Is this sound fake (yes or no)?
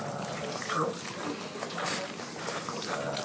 no